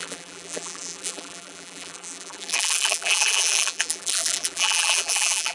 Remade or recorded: remade